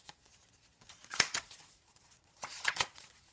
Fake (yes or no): yes